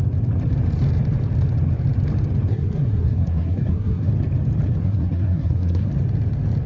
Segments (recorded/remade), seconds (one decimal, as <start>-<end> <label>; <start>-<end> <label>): 0.0-2.5 recorded; 2.5-4.1 remade; 4.1-4.8 recorded; 4.8-5.9 remade; 5.9-6.7 recorded